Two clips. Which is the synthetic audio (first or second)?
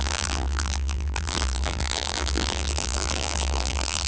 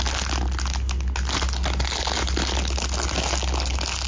first